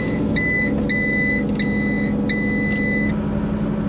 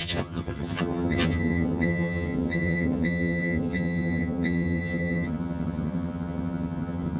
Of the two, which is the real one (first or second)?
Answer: first